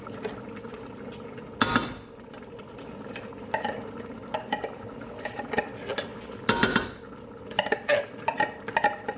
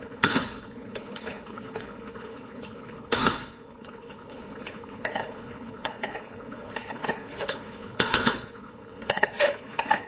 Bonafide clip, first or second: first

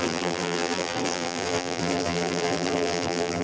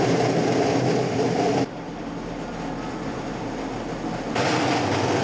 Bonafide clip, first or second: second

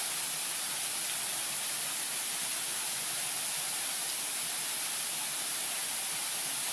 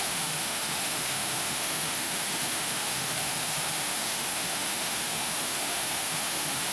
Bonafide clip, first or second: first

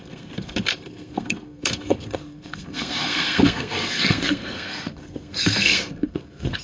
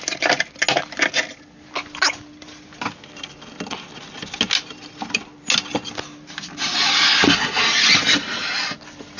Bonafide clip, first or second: second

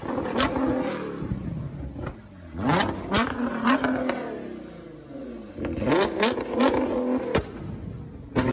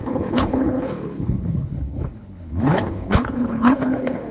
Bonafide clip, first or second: first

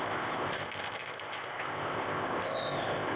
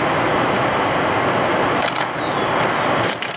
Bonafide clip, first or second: second